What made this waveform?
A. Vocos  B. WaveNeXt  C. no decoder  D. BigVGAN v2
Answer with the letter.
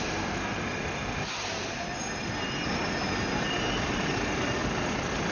C